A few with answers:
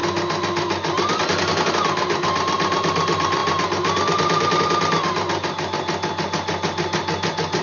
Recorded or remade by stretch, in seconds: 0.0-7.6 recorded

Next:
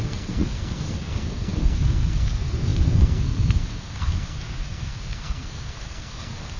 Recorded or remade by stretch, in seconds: 0.0-6.6 remade

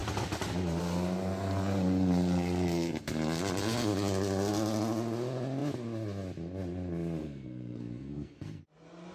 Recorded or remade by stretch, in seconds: 0.0-7.2 recorded; 7.2-8.6 remade; 8.6-9.1 recorded

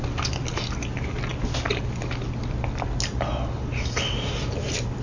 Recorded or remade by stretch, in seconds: 0.0-5.0 recorded

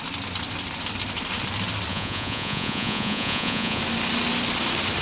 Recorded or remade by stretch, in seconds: 0.0-1.9 recorded; 1.9-3.8 remade; 3.8-5.0 recorded

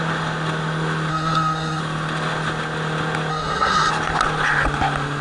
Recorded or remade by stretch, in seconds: 0.0-1.1 recorded; 1.1-1.8 remade; 1.8-3.3 recorded; 3.3-3.9 remade; 3.9-5.2 recorded

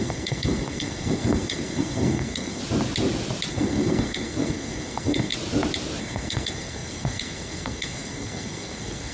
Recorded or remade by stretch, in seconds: 0.0-2.6 remade; 2.6-3.5 recorded; 3.5-5.3 remade; 5.3-6.0 recorded; 6.0-9.1 remade